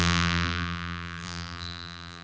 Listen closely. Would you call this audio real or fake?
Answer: fake